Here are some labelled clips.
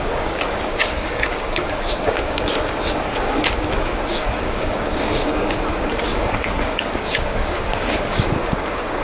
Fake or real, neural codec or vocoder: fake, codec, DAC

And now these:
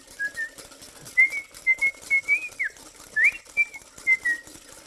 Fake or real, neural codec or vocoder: real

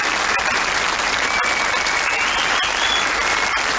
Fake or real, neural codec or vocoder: real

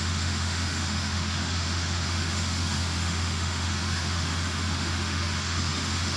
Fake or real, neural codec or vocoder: fake, autoencoder, DAC-VAE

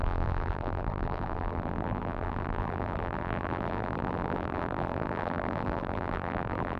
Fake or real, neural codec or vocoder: fake, vocoder, BigVGAN v2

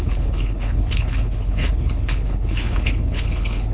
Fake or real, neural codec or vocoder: fake, codec, HILCodec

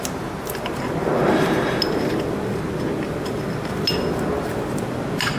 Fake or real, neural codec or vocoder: real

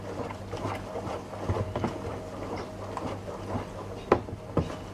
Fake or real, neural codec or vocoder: real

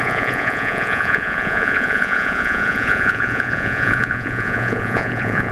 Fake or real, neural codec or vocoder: fake, vocoder, Vocos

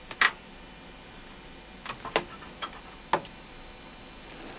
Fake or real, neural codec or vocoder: real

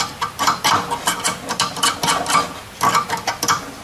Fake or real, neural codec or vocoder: real